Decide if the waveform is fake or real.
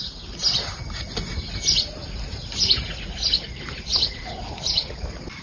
real